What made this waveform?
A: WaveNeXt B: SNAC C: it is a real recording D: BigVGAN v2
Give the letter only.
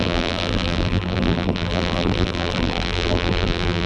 D